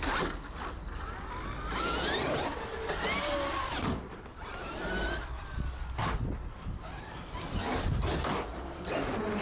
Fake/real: real